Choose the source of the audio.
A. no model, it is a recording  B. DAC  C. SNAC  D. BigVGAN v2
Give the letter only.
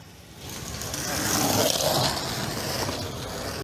A